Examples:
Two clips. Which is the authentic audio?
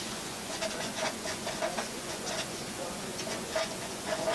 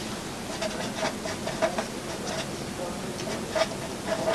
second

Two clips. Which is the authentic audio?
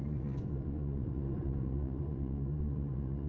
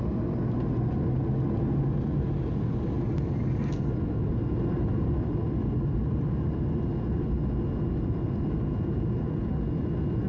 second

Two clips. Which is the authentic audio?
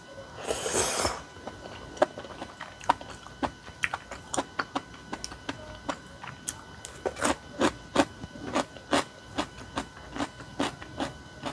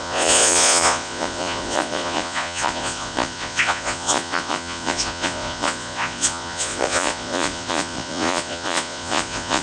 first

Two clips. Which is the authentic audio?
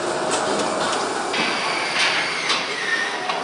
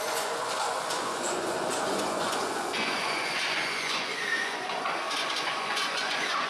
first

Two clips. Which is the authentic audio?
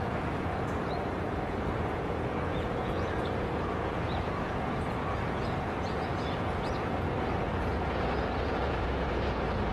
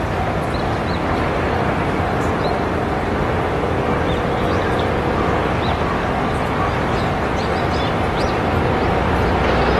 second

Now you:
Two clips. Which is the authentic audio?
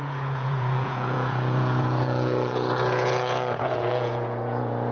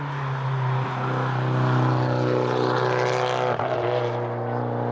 second